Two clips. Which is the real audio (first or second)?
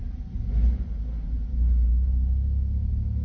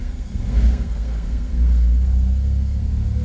first